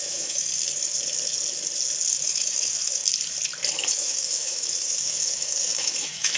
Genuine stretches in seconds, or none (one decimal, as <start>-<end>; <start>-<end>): 0.5-2.1; 3.0-3.7